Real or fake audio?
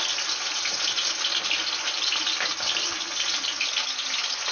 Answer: real